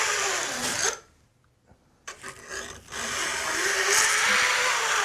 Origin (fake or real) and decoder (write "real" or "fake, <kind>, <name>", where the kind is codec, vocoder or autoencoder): real